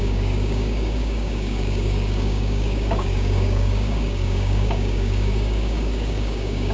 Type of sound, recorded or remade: remade